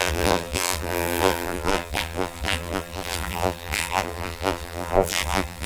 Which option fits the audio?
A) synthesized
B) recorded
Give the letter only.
A